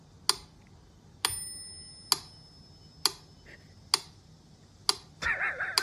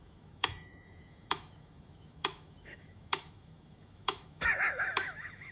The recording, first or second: first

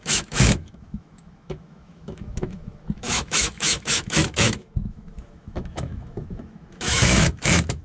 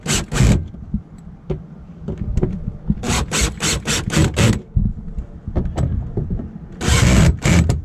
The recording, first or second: second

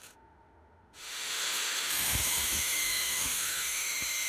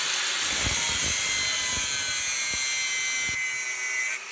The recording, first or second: second